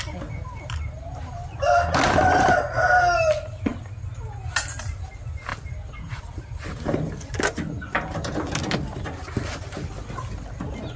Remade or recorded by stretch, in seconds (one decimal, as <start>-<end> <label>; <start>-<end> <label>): 0.0-11.0 recorded